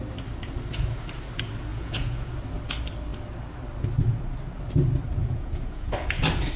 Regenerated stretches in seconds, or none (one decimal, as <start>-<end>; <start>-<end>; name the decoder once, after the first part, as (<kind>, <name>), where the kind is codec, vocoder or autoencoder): 1.7-2.3 (vocoder, Vocos); 5.2-5.9